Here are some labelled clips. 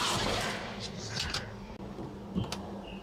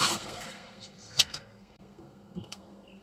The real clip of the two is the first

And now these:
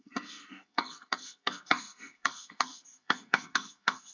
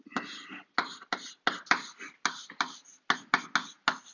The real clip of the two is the second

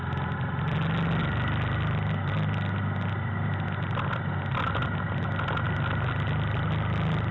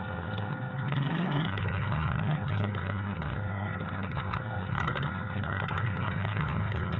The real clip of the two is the first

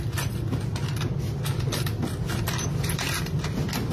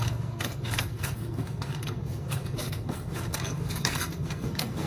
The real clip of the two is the first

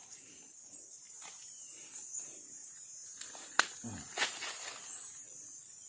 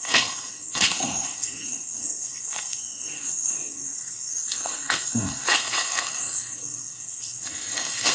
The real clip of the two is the first